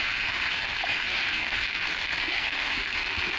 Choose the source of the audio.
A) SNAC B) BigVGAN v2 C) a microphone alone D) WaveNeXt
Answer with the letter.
A